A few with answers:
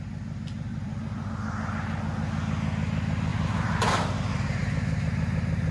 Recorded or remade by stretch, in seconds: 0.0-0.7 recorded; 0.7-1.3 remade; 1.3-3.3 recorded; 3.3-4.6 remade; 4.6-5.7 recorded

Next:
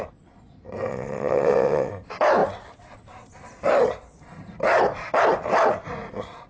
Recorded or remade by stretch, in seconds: 0.0-0.9 recorded; 0.9-1.9 remade; 1.9-6.5 recorded

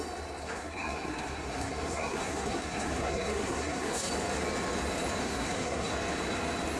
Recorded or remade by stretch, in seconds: 0.0-0.4 recorded; 0.4-4.1 remade; 4.1-5.2 recorded; 5.2-5.9 remade; 5.9-6.8 recorded

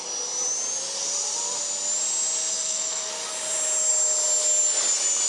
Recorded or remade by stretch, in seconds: 0.0-2.5 recorded; 2.5-3.1 remade; 3.1-5.3 recorded

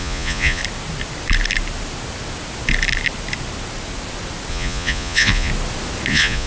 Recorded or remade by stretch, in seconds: 0.0-0.6 remade; 0.6-4.5 recorded; 4.5-5.5 remade; 5.5-6.1 recorded; 6.1-6.5 remade

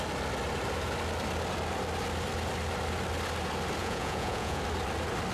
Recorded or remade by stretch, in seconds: 0.0-3.8 recorded; 3.8-4.6 remade; 4.6-5.3 recorded

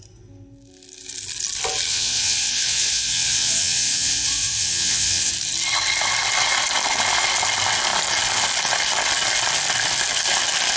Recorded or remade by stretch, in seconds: 0.0-1.9 recorded; 1.9-5.3 remade; 5.3-10.8 recorded